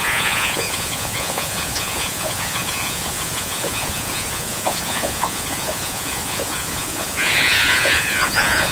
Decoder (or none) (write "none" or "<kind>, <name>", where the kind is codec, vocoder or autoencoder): vocoder, Vocos